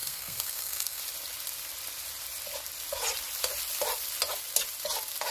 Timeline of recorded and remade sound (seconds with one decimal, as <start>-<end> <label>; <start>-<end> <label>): 0.0-1.0 remade; 1.0-5.3 recorded